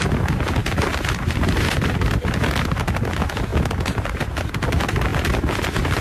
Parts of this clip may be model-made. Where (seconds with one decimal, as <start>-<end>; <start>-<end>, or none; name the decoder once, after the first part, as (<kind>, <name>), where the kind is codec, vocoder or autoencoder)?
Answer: none